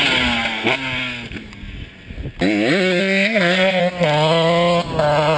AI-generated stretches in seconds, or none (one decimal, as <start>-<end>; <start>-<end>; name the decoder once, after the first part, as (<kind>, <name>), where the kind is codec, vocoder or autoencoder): 3.0-3.8 (codec, ZipCodec)